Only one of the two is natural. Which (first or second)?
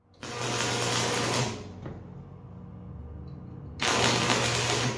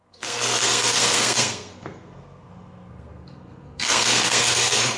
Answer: first